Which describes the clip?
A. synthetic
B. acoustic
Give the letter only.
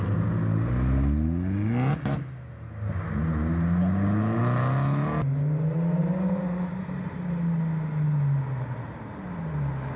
B